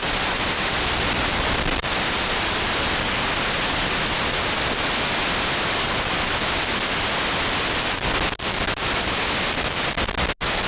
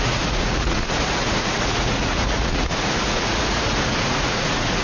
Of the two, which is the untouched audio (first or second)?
first